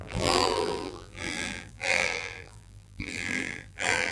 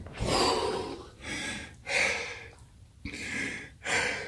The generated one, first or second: first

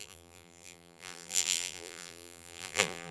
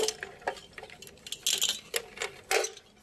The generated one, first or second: first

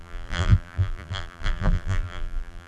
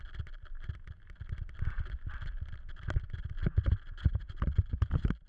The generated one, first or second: first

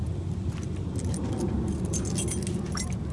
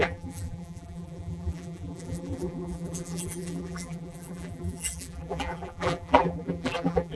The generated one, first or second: second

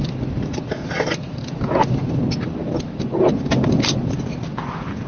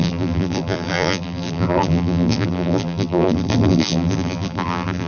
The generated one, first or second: second